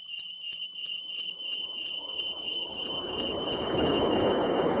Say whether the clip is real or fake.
fake